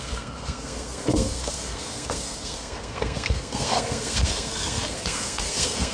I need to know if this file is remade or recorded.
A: remade